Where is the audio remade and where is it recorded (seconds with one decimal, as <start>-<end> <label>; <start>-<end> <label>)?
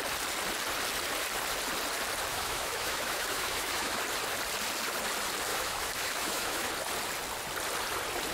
0.0-2.3 recorded; 2.3-4.0 remade; 4.0-5.5 recorded; 5.5-6.7 remade; 6.7-8.3 recorded